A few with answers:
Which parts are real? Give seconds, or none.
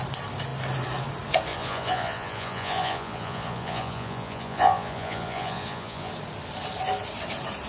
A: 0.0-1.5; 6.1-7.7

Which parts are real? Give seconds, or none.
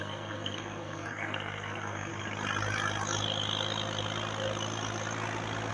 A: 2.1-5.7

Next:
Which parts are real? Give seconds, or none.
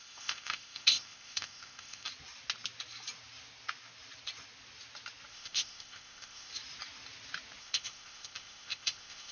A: 2.1-5.3; 6.5-7.6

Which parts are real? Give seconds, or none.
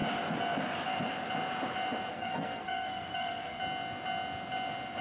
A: 0.0-2.1; 3.6-5.0